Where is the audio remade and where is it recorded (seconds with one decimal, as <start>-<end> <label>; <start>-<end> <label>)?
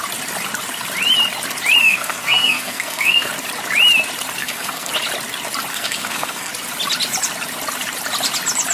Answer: 0.0-1.8 recorded; 1.8-3.3 remade; 3.3-4.4 recorded; 4.4-4.9 remade; 4.9-5.7 recorded; 5.7-6.5 remade; 6.5-8.7 recorded